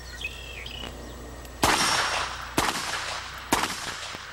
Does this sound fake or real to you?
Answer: real